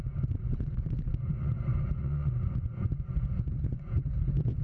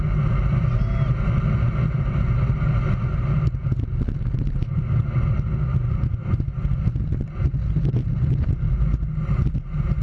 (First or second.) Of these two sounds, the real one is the second